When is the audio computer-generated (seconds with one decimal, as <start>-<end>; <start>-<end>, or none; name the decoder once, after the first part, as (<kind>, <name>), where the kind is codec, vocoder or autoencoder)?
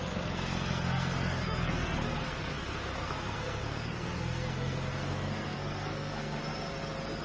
0.0-6.4 (codec, SNAC)